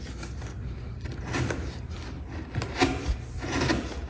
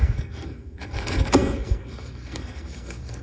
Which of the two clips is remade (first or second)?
second